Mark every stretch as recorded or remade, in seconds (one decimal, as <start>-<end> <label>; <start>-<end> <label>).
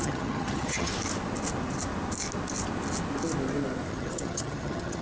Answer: 0.0-0.9 remade; 0.9-3.9 recorded; 3.9-5.0 remade